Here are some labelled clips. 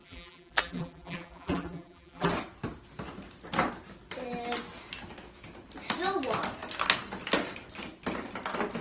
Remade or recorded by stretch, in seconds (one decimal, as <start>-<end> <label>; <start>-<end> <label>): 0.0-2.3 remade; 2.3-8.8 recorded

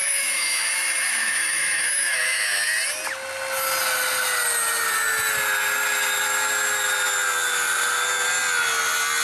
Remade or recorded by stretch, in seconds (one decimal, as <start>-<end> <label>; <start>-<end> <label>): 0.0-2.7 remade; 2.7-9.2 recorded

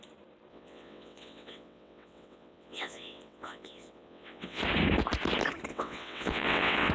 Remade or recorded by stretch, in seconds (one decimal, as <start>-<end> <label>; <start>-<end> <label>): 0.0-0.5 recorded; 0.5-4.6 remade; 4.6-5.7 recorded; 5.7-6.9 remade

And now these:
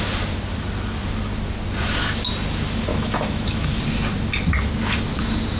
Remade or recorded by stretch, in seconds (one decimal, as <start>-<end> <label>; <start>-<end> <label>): 0.0-2.9 recorded; 2.9-3.8 remade; 3.8-5.6 recorded

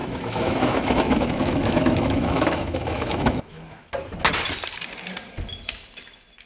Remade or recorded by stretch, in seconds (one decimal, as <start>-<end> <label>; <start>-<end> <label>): 0.0-3.9 remade; 3.9-6.5 recorded

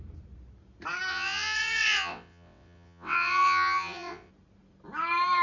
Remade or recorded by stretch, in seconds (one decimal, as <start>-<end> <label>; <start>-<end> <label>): 0.0-1.1 recorded; 1.1-4.3 remade; 4.3-5.4 recorded

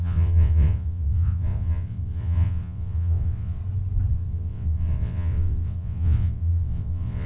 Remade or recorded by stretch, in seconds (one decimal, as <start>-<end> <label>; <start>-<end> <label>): 0.0-3.6 remade; 3.6-4.1 recorded; 4.1-7.3 remade